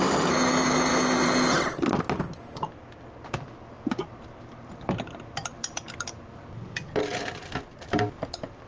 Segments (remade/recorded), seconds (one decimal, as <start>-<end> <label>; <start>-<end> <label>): 0.0-7.0 recorded; 7.0-7.9 remade; 7.9-8.7 recorded